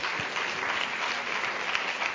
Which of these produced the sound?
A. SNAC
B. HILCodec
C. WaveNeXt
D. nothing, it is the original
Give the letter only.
D